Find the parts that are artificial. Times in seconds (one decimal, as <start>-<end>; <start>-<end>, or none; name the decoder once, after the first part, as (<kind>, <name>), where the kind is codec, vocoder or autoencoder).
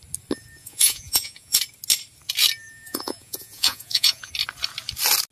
0.6-1.6 (vocoder, Vocos); 2.6-4.3